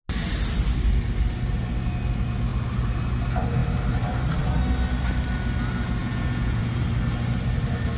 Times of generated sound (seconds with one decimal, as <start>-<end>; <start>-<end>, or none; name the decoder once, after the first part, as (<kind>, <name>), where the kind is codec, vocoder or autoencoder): 6.0-6.8 (vocoder, Vocos)